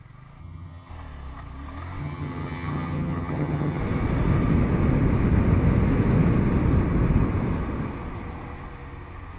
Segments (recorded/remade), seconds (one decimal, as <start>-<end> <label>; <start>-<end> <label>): 0.0-0.4 recorded; 0.4-0.9 remade; 0.9-2.0 recorded; 2.0-3.8 remade; 3.8-9.4 recorded